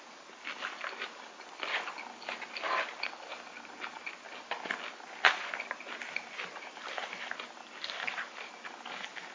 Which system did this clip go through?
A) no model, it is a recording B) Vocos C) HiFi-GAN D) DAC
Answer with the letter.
A